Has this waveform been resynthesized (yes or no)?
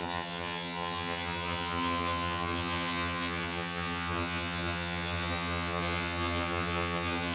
yes